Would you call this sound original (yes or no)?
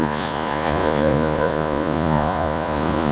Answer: no